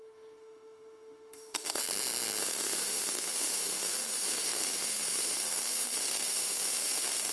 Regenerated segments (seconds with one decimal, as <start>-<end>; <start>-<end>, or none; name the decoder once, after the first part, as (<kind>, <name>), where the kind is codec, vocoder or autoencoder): 0.0-1.8 (autoencoder, DAC-VAE); 2.4-7.3